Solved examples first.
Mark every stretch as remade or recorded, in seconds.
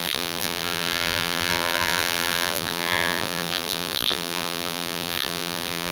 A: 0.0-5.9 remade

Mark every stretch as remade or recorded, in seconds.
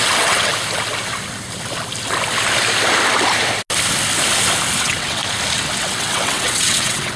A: 0.0-0.5 remade; 0.5-4.8 recorded; 4.8-5.2 remade; 5.2-5.8 recorded; 5.8-7.2 remade